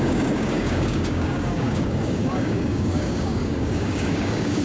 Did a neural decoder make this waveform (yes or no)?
yes